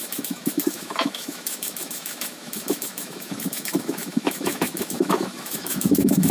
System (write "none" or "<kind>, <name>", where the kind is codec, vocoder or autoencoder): autoencoder, DAC-VAE